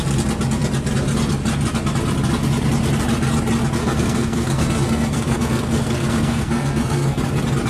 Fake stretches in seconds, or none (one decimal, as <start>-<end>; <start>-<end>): 3.8-7.2